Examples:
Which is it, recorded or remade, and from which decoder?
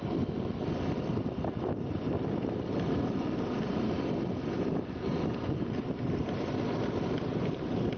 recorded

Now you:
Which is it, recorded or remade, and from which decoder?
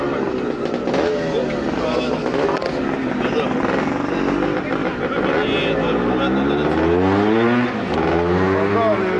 recorded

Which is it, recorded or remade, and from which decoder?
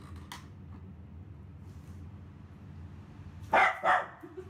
recorded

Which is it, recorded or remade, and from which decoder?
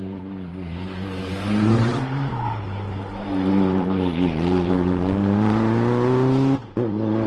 remade, vocoder, BigVGAN v2